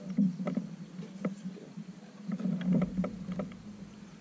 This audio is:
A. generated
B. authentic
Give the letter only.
B